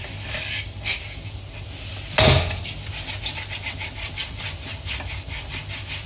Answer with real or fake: real